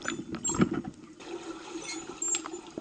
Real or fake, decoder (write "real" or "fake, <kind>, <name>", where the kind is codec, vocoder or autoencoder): real